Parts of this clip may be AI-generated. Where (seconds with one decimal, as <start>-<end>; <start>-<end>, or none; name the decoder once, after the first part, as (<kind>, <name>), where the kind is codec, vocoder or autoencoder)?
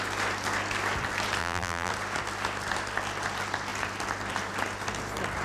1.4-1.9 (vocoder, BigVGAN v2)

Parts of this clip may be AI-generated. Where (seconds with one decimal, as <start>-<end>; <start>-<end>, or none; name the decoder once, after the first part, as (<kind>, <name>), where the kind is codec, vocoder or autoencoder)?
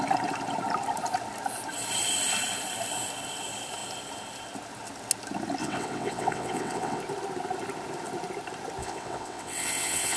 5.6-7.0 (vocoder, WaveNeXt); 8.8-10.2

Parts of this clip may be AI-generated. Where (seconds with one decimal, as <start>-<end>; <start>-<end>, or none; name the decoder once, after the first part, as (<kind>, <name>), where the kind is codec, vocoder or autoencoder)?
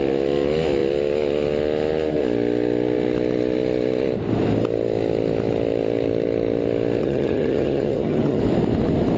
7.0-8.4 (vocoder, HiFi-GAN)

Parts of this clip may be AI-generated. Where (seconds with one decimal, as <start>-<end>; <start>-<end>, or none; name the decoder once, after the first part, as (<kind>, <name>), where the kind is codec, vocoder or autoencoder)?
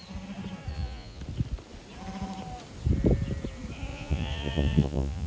0.7-1.2 (vocoder, Vocos); 3.9-5.3